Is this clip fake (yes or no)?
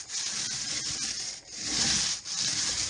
yes